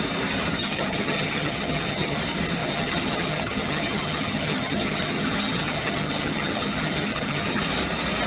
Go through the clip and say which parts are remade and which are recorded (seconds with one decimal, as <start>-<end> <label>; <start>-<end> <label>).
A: 0.0-0.6 recorded; 0.6-2.2 remade; 2.2-2.6 recorded; 2.6-7.6 remade; 7.6-8.3 recorded